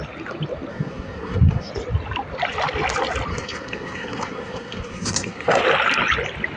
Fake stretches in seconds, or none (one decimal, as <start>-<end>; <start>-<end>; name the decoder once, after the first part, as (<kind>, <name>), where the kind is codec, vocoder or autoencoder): 0.7-1.7 (codec, SNAC); 3.3-5.6